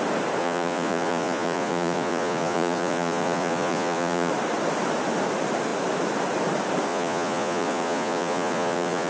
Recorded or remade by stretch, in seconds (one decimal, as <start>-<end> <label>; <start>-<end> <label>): 0.0-0.4 recorded; 0.4-4.3 remade; 4.3-6.9 recorded; 6.9-9.1 remade

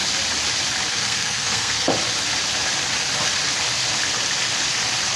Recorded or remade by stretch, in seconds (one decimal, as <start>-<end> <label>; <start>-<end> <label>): 0.0-0.9 recorded; 0.9-1.9 remade; 1.9-5.2 recorded

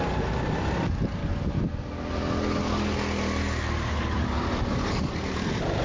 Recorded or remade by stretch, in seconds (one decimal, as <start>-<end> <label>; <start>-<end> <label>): 0.0-5.8 recorded

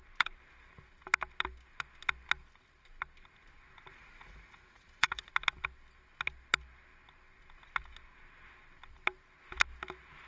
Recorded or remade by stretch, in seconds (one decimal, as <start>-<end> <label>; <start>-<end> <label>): 0.0-3.9 recorded; 3.9-5.3 remade; 5.3-10.3 recorded

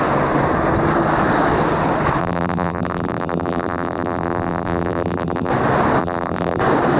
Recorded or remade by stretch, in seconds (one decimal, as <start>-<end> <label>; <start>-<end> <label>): 0.0-2.2 recorded; 2.2-5.5 remade; 5.5-6.0 recorded; 6.0-6.6 remade; 6.6-7.0 recorded